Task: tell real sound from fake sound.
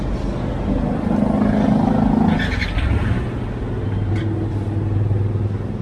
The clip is real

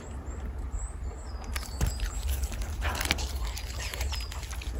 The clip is real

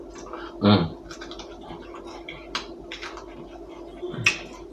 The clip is real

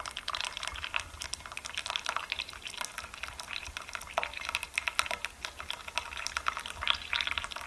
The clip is real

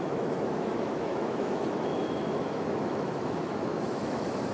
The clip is fake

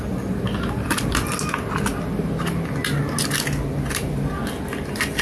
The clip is real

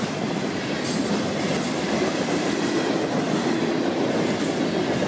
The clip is real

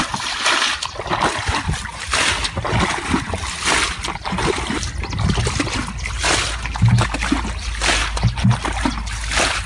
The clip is real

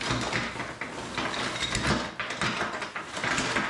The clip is real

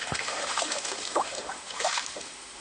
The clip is fake